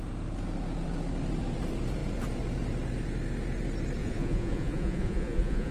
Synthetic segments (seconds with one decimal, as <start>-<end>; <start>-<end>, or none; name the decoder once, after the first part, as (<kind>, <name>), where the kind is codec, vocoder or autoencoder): 4.0-5.7 (vocoder, Vocos)